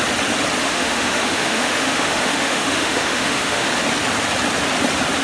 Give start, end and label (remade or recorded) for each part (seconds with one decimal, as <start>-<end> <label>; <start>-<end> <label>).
0.0-0.6 recorded; 0.6-3.7 remade; 3.7-5.2 recorded

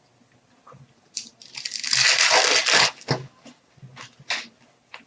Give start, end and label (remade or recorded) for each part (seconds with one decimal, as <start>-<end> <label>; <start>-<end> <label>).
0.0-5.1 recorded

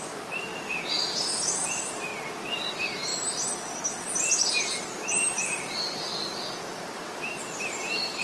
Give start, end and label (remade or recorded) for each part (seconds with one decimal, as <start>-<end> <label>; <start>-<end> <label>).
0.0-0.5 remade; 0.5-1.0 recorded; 1.0-2.1 remade; 2.1-2.7 recorded; 2.7-3.1 remade; 3.1-4.5 recorded; 4.5-8.2 remade

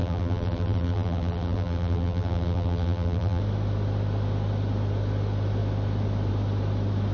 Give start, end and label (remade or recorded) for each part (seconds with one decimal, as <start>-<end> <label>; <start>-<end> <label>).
0.0-3.4 remade; 3.4-7.1 recorded

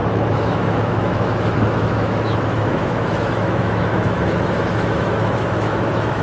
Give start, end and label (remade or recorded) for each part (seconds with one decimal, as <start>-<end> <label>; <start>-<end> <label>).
0.0-6.2 remade

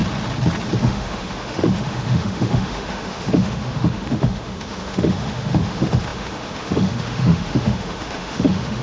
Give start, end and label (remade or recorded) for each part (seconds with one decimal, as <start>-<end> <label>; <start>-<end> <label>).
0.0-0.8 recorded; 0.8-8.8 remade

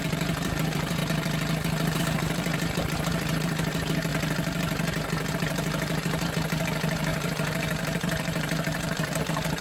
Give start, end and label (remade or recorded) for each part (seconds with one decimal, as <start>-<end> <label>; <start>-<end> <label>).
0.0-1.0 remade; 1.0-2.0 recorded; 2.0-4.1 remade; 4.1-5.3 recorded; 5.3-9.6 remade

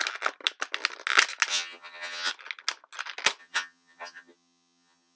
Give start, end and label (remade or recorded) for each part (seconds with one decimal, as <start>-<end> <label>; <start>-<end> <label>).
0.0-1.5 recorded; 1.5-2.3 remade; 2.3-3.4 recorded; 3.4-5.2 remade